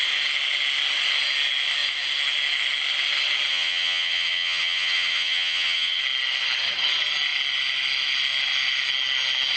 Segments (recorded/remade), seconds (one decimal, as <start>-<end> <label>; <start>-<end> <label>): 0.0-3.5 recorded; 3.5-6.0 remade; 6.0-9.6 recorded